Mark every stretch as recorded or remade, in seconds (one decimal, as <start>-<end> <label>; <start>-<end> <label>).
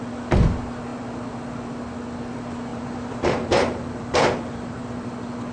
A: 0.0-2.7 recorded; 2.7-5.1 remade; 5.1-5.5 recorded